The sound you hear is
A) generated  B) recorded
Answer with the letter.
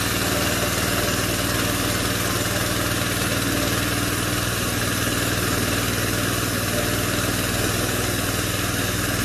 B